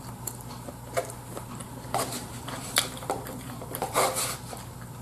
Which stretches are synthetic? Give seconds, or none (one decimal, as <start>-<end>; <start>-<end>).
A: 1.6-4.0